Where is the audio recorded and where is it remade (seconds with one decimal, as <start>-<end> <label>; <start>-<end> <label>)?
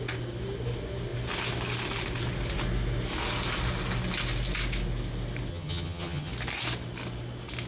0.0-5.5 recorded; 5.5-6.3 remade; 6.3-7.7 recorded